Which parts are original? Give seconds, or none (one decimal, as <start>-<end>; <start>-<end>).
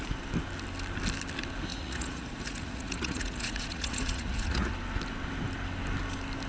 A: 0.0-1.7; 4.7-6.5